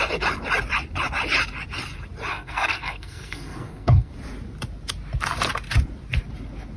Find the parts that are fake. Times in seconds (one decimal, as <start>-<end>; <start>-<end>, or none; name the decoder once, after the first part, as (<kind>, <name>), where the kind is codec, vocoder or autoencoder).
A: 2.3-4.1 (codec, SNAC)